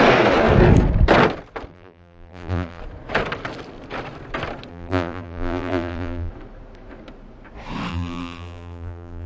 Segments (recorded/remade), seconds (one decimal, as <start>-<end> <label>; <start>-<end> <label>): 0.0-1.7 recorded; 1.7-2.8 remade; 2.8-4.7 recorded; 4.7-6.3 remade; 6.3-7.9 recorded; 7.9-9.3 remade